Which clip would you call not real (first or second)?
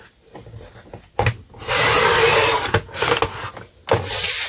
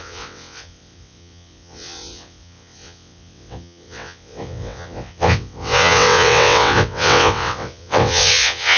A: second